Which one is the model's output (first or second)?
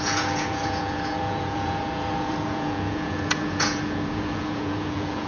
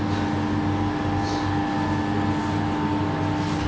first